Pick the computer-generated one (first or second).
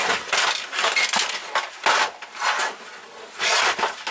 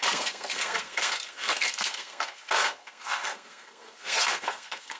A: second